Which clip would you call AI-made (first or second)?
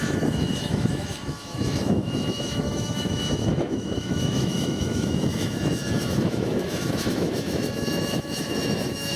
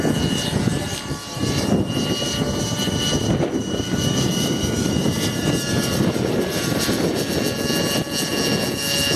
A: first